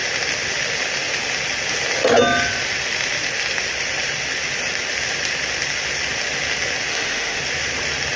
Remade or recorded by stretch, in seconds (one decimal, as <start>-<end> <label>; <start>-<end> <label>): 0.0-6.9 recorded; 6.9-7.4 remade; 7.4-8.2 recorded